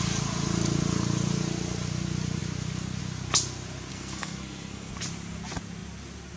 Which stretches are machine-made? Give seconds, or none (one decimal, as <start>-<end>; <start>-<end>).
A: 3.9-4.9